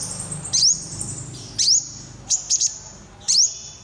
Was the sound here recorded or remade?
recorded